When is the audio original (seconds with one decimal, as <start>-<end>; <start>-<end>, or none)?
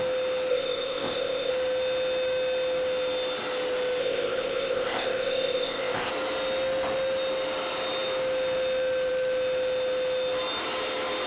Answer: 0.0-0.5; 1.5-4.0; 6.1-11.3